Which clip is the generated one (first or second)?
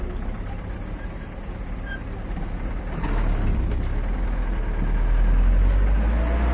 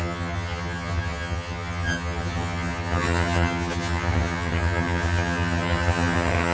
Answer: second